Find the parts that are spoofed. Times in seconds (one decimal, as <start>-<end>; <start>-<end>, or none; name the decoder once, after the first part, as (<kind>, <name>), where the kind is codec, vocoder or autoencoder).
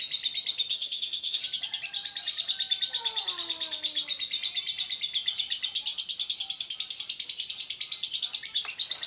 0.7-1.4 (codec, SNAC)